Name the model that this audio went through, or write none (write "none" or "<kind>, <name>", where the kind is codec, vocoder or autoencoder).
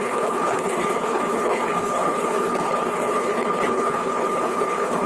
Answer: codec, HILCodec